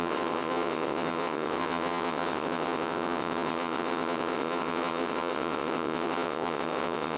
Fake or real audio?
fake